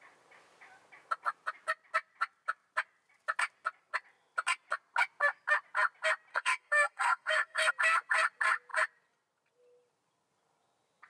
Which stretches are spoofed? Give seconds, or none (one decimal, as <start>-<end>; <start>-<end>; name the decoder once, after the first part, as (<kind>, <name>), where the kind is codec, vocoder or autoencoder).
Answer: 6.3-7.7 (codec, SNAC)